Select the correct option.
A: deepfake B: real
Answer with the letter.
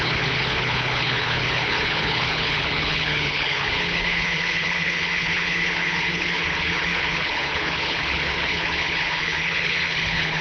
A